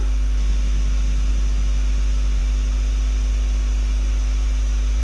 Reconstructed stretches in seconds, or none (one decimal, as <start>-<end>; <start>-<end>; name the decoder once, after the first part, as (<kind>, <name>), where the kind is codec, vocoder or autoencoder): none